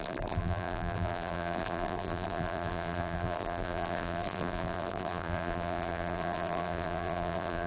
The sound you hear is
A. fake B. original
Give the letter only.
A